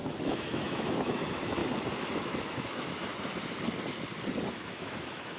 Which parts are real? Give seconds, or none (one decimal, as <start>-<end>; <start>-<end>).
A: 1.6-2.2; 3.1-4.5